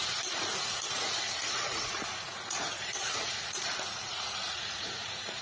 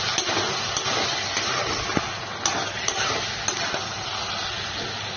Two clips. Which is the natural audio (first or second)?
second